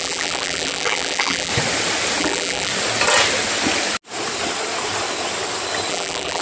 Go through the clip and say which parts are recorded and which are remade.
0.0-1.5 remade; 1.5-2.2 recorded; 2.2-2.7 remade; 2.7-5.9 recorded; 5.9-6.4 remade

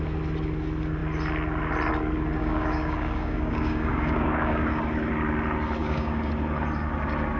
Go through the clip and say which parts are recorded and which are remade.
0.0-2.4 recorded; 2.4-4.8 remade; 4.8-5.8 recorded; 5.8-6.3 remade; 6.3-7.4 recorded